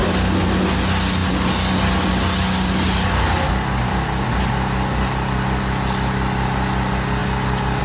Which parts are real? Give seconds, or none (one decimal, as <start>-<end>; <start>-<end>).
0.0-7.8